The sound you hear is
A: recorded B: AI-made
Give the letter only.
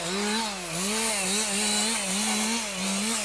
A